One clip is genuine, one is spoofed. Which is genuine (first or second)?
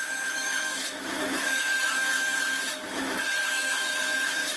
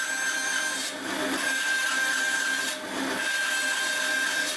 second